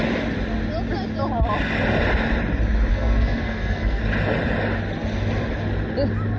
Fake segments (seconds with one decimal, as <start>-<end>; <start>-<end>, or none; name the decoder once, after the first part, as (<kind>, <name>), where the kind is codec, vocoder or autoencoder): 2.9-4.0 (codec, SNAC)